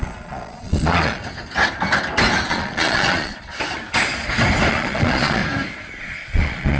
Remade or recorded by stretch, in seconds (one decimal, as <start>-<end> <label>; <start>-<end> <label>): 0.0-1.2 remade; 1.2-2.5 recorded; 2.5-3.5 remade; 3.5-4.7 recorded; 4.7-5.4 remade; 5.4-6.0 recorded; 6.0-6.8 remade